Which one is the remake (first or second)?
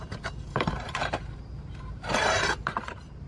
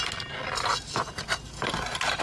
first